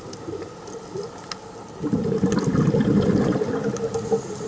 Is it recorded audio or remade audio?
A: recorded